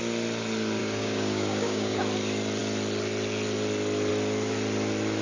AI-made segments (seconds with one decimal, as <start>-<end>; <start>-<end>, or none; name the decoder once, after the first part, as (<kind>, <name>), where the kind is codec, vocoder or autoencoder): 0.8-2.0 (codec, DAC)